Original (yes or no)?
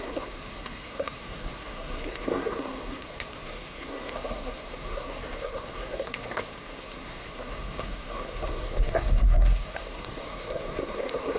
no